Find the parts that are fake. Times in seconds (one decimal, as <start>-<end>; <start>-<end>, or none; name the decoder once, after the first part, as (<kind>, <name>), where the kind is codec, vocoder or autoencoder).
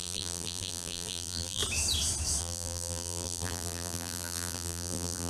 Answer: 0.0-1.6 (vocoder, BigVGAN v2); 2.4-5.3